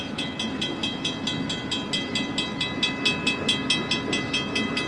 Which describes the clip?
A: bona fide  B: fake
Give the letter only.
A